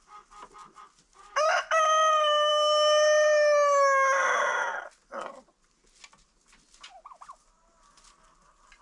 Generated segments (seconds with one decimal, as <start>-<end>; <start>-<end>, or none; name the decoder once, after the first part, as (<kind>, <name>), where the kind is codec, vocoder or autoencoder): none